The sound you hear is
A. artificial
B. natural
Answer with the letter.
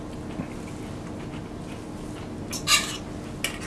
B